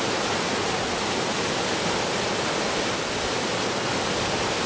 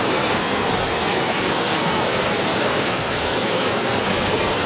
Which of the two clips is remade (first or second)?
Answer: second